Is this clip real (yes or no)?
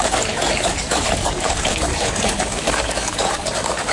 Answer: no